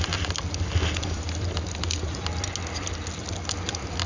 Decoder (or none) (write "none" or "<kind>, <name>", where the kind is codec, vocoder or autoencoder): none